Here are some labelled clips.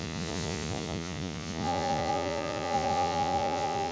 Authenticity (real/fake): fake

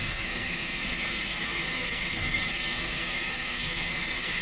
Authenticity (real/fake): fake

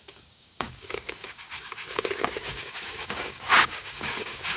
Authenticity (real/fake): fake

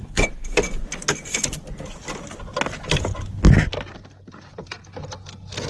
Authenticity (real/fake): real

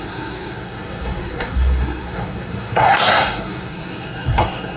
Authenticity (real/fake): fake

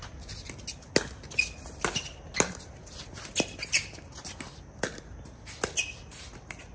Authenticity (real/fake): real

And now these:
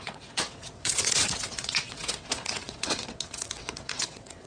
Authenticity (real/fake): fake